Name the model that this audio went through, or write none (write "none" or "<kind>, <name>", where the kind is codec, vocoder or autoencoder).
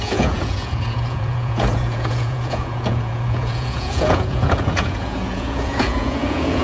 vocoder, Vocos